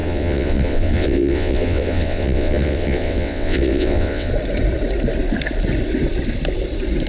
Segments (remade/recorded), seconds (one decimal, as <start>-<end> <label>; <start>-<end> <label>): 0.0-4.3 remade; 4.3-7.1 recorded